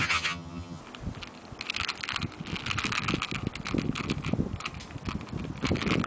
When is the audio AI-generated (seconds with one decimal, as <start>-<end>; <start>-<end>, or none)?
0.0-0.8